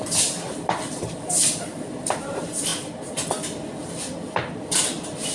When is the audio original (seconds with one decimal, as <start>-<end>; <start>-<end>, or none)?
2.7-4.6